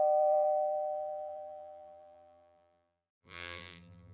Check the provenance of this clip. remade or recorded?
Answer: remade